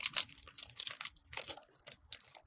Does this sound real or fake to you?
real